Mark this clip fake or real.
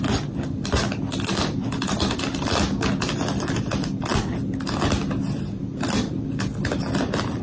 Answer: real